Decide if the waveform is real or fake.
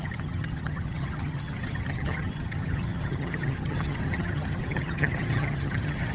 fake